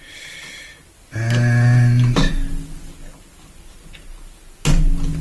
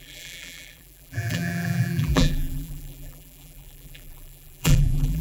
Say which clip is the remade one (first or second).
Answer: second